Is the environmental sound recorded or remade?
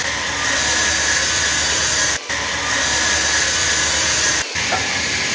recorded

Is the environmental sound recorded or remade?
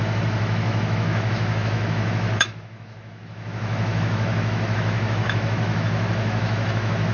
remade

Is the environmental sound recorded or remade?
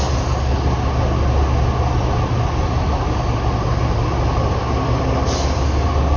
recorded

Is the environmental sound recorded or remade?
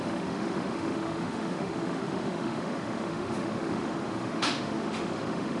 remade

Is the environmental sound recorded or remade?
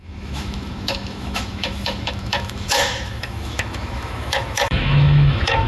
remade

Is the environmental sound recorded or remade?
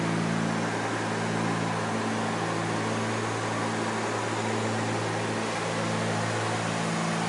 recorded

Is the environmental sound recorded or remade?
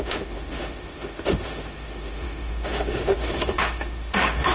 remade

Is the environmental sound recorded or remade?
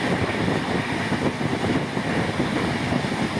recorded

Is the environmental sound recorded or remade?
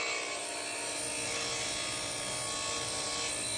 recorded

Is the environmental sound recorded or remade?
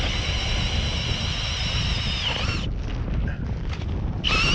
recorded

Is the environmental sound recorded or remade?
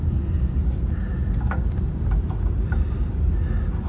recorded